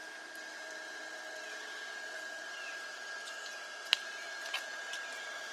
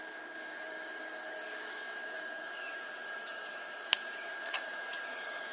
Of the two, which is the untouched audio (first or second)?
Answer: first